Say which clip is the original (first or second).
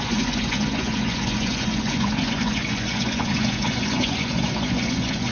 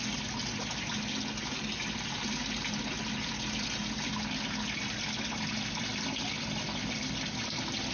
second